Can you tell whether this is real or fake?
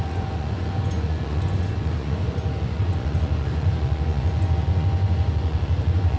fake